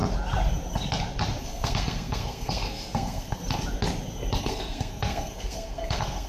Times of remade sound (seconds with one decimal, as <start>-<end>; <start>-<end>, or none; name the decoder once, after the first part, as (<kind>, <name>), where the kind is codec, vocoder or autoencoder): 1.4-3.4 (codec, SNAC); 4.4-6.3